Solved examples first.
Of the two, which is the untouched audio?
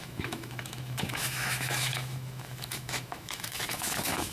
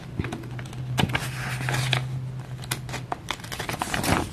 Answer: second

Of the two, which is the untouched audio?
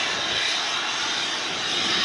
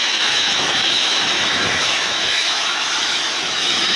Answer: first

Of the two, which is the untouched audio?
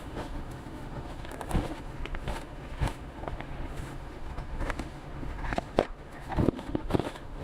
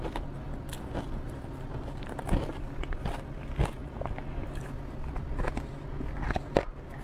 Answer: second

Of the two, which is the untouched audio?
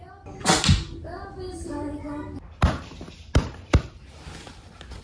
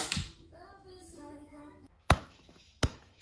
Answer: first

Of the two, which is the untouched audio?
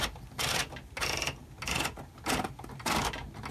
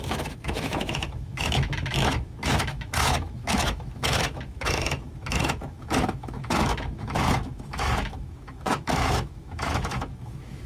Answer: first